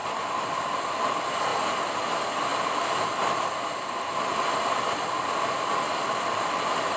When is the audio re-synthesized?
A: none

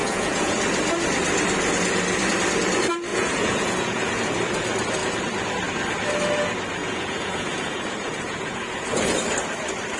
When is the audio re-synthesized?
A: 0.0-0.6 (vocoder, Vocos); 3.1-4.3; 6.8-9.0

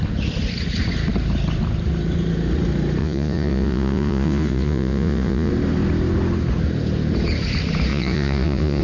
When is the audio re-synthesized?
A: 3.0-5.5 (vocoder, Vocos); 7.9-8.8

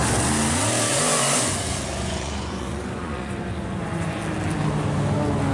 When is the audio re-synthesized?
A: 0.9-4.2 (vocoder, Vocos)

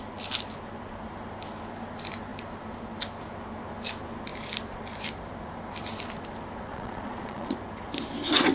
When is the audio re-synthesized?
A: 6.7-7.5 (vocoder, Vocos)

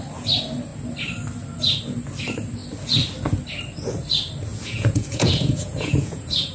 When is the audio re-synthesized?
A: 4.5-6.5 (vocoder, Vocos)

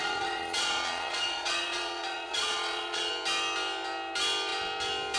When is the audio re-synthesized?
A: 0.0-3.1 (vocoder, Vocos)